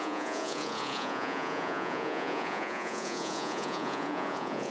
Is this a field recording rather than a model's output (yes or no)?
no